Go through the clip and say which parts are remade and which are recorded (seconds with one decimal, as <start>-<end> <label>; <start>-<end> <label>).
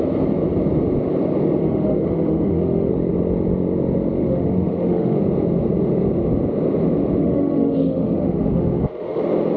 0.0-1.6 recorded; 1.6-2.9 remade; 2.9-4.2 recorded; 4.2-5.2 remade; 5.2-7.2 recorded; 7.2-9.2 remade; 9.2-9.6 recorded